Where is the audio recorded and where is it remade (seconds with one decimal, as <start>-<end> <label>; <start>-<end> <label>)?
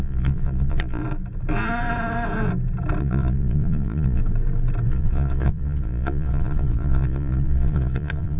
0.0-1.0 remade; 1.0-3.0 recorded; 3.0-4.2 remade; 4.2-4.9 recorded; 4.9-8.4 remade